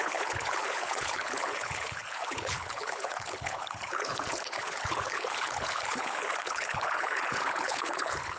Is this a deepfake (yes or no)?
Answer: yes